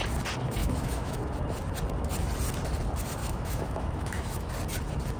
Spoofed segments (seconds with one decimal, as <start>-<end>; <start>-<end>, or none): 0.6-1.2; 3.2-4.5